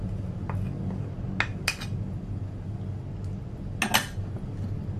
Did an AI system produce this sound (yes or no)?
no